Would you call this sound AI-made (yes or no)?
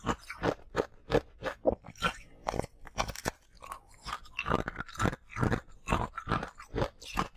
no